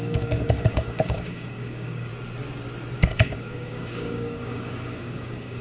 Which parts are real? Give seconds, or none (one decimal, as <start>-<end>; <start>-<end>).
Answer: 2.1-3.0